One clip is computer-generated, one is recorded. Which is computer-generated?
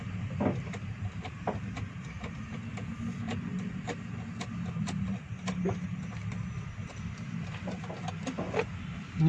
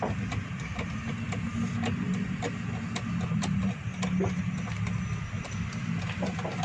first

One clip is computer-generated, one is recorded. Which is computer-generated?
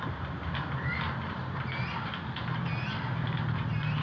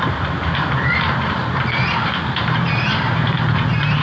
second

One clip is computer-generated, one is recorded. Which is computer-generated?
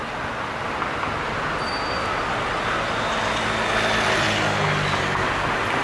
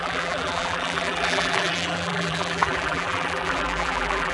second